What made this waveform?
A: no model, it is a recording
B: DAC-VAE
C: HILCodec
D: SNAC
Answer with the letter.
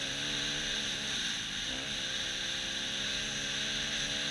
A